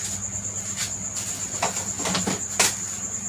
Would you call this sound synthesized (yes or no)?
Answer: no